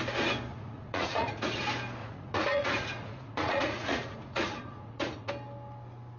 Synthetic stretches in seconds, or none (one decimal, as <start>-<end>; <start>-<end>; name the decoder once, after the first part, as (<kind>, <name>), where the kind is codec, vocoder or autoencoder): 0.5-1.6 (vocoder, Vocos); 2.0-5.3